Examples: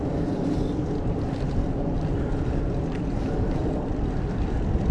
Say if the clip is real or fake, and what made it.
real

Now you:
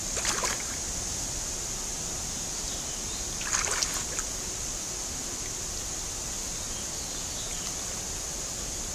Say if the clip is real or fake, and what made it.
real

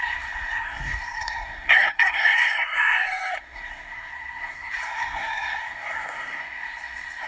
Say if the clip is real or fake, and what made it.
fake, codec, SNAC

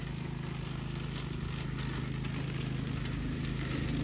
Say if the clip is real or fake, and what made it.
real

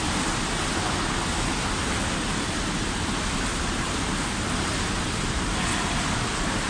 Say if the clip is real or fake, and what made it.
real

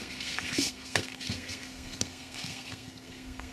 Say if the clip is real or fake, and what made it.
fake, codec, SNAC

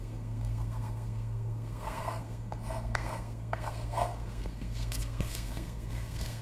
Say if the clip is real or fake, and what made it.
fake, codec, SNAC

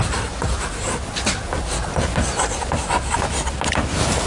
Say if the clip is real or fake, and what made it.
real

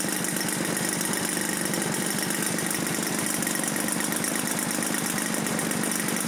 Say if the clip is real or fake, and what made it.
real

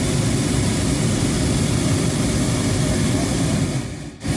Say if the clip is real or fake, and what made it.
real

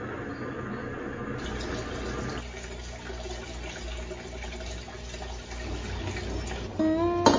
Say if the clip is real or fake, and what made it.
real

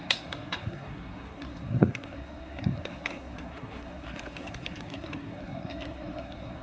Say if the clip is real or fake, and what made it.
fake, codec, SNAC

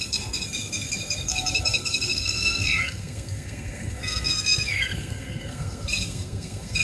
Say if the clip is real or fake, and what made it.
fake, codec, SNAC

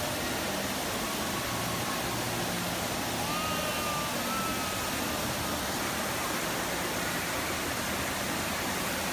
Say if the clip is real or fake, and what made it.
real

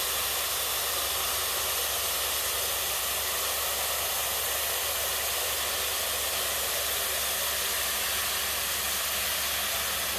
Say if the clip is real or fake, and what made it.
real